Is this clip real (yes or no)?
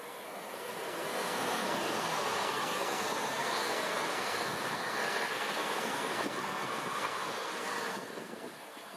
no